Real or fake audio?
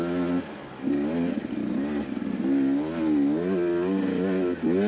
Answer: real